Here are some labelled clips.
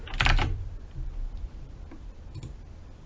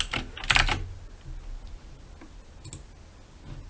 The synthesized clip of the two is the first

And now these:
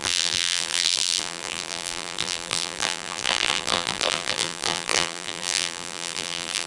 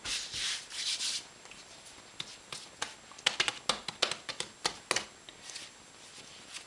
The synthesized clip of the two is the first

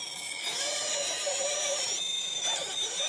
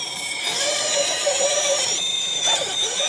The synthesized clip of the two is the second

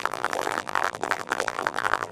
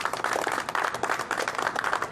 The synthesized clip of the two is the first